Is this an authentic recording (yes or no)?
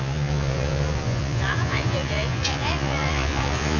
no